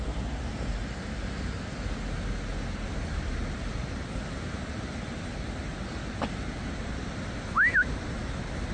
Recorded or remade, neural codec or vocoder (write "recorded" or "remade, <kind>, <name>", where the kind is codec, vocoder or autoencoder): recorded